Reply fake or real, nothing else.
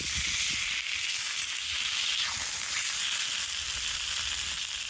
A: real